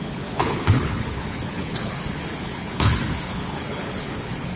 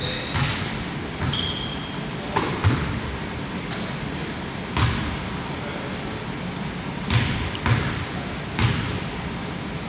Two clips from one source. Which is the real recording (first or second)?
second